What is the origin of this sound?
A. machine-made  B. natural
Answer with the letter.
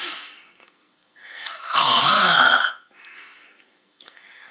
A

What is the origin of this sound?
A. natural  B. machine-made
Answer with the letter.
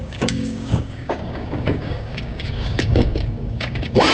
B